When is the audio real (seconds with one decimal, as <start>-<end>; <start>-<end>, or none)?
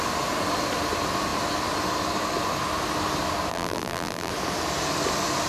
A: 0.0-3.5; 4.3-5.5